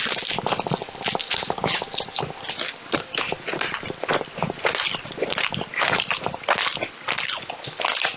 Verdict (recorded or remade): recorded